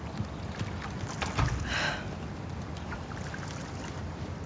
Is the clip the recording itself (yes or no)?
yes